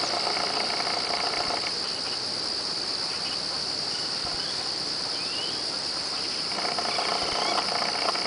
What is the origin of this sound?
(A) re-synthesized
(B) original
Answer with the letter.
B